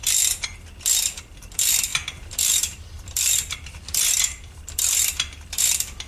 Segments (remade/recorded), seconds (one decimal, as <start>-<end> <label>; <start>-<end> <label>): 0.0-1.9 recorded; 1.9-5.6 remade; 5.6-6.1 recorded